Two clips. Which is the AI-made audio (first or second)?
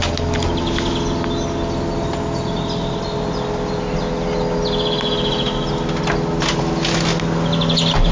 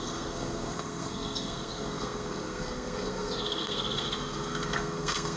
second